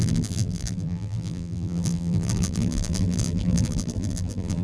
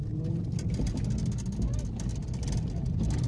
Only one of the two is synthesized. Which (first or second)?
first